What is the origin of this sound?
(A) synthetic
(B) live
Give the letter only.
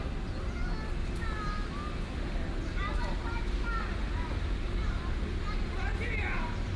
B